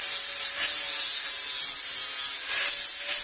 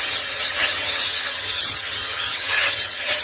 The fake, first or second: second